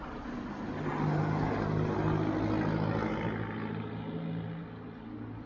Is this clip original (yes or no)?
yes